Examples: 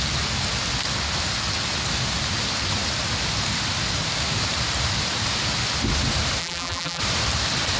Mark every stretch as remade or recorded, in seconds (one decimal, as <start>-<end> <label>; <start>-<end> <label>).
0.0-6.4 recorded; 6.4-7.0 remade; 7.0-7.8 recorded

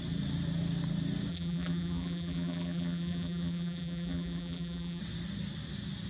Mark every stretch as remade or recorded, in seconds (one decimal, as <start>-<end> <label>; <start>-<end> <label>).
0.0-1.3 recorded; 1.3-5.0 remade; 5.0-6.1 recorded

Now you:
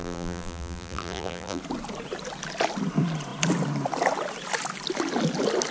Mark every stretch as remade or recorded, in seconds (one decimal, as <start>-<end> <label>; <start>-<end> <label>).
0.0-1.6 remade; 1.6-5.7 recorded

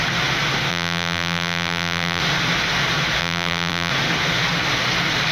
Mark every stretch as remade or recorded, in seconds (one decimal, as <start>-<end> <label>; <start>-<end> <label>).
0.0-0.7 recorded; 0.7-2.2 remade; 2.2-3.2 recorded; 3.2-3.9 remade; 3.9-5.3 recorded